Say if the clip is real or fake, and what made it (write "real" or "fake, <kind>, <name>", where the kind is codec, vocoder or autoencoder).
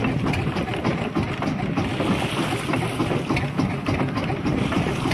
real